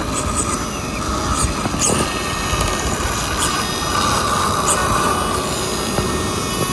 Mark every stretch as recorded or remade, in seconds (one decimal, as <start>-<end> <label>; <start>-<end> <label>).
0.0-6.7 recorded